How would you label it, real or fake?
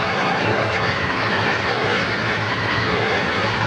fake